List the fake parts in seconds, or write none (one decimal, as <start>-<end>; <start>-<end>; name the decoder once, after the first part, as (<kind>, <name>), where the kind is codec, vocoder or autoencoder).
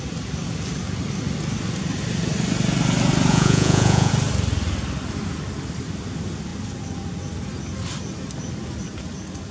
3.3-4.1 (vocoder, Vocos)